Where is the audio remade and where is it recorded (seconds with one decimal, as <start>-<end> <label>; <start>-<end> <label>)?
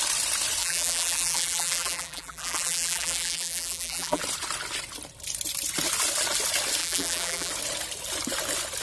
0.0-0.6 recorded; 0.6-4.2 remade; 4.2-6.8 recorded; 6.8-7.5 remade; 7.5-8.8 recorded